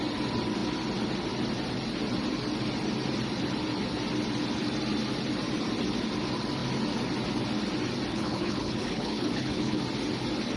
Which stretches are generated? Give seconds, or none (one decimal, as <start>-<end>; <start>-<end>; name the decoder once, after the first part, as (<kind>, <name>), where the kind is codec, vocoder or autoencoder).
8.1-9.8 (codec, HILCodec)